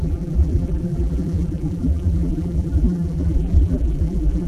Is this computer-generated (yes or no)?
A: yes